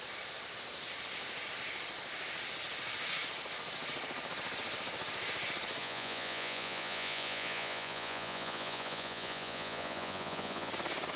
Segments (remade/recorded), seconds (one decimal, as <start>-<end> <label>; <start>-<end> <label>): 0.0-5.8 recorded; 5.8-10.7 remade; 10.7-11.2 recorded